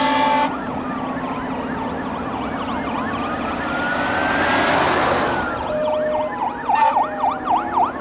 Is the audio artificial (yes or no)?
no